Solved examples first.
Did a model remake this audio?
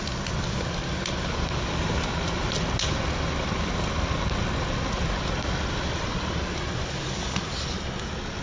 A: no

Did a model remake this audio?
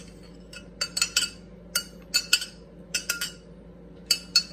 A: no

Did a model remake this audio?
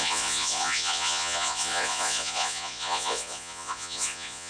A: yes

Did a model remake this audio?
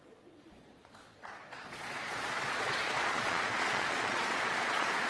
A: yes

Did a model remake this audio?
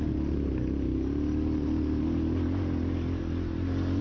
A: no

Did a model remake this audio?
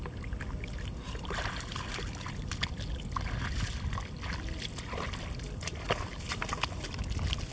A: no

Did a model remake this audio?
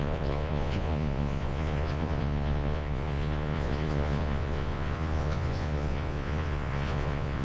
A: yes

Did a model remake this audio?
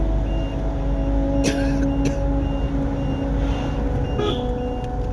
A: no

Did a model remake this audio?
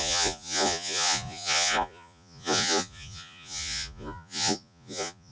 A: yes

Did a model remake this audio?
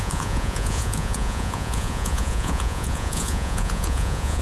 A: yes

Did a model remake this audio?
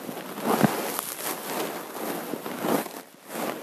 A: no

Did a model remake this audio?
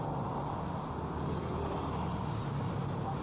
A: no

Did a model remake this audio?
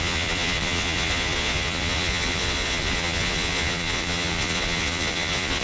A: yes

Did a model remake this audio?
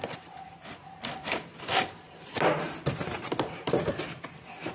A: no